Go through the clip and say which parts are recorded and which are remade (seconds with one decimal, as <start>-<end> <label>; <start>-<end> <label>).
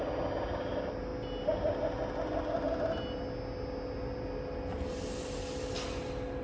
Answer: 0.0-6.4 recorded